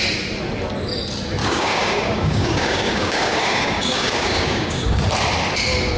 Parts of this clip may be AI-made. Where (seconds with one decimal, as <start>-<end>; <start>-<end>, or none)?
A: 1.4-5.0